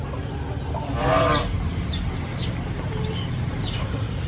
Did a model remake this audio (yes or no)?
no